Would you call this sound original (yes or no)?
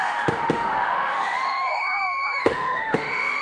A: no